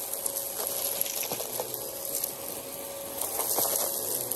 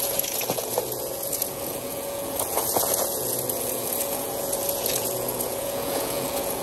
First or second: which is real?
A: first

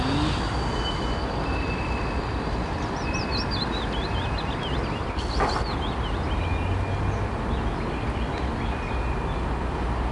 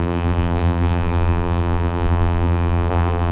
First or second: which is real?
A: first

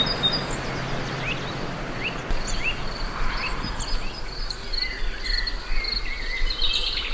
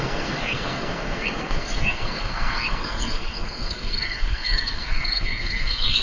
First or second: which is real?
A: first